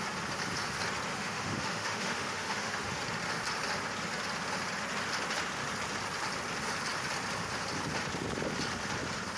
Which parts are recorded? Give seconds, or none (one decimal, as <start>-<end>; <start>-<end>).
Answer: 0.0-1.1; 2.9-9.4